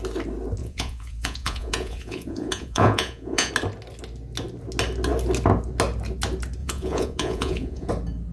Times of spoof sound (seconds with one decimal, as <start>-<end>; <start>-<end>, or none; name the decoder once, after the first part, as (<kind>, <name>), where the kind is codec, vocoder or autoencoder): 0.6-3.5 (vocoder, Vocos); 6.6-7.9